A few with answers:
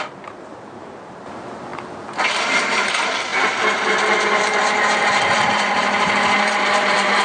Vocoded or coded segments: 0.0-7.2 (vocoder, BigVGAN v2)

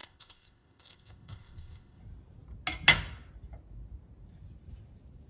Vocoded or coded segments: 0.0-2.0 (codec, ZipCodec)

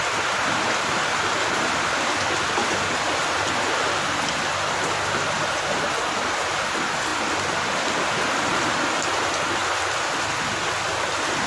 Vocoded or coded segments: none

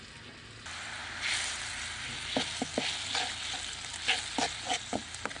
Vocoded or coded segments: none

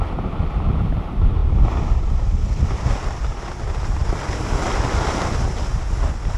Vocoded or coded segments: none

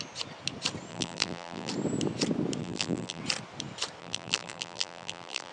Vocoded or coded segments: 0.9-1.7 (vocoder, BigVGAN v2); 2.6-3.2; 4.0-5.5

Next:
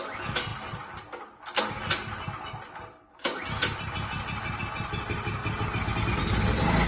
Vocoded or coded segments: none